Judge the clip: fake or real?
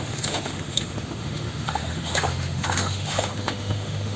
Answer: fake